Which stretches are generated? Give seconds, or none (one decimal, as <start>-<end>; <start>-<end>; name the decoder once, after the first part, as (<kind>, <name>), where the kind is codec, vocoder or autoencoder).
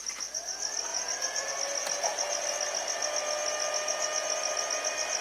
0.9-1.5 (vocoder, Vocos)